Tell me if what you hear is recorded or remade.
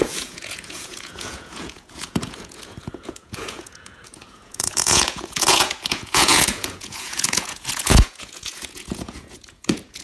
remade